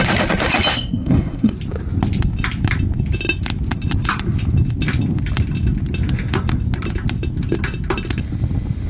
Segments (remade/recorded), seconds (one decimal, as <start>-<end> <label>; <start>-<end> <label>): 0.0-0.7 recorded; 0.7-1.5 remade; 1.5-8.9 recorded